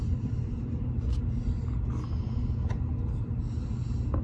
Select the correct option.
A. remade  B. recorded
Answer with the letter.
B